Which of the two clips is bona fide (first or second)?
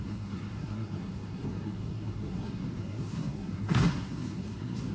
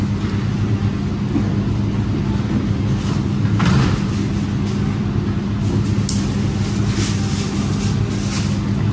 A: second